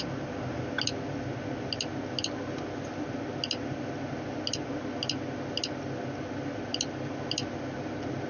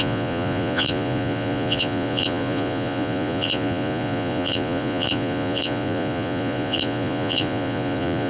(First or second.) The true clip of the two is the first